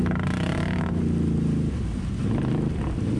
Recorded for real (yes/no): yes